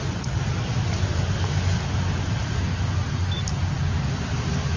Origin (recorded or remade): recorded